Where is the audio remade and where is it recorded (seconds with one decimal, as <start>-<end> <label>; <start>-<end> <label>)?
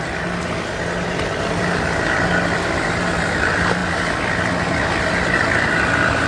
0.0-6.3 recorded